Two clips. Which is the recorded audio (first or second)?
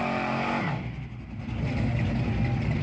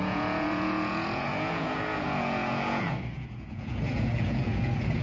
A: first